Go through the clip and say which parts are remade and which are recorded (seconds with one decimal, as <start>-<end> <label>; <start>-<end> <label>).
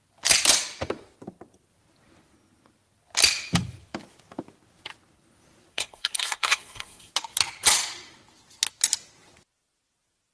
0.0-5.7 recorded; 5.7-7.1 remade; 7.1-10.3 recorded